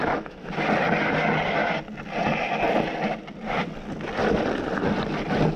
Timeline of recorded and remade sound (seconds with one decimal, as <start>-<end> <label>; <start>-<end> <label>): 0.0-0.5 remade; 0.5-5.6 recorded